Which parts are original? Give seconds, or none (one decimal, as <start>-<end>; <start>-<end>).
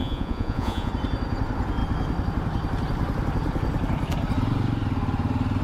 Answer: 0.9-5.6